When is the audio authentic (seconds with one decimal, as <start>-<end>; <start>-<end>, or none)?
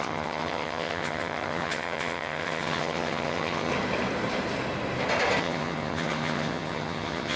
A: 3.7-5.4